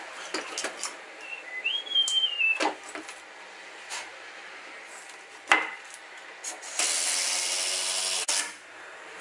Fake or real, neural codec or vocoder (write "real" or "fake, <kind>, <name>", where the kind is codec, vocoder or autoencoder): real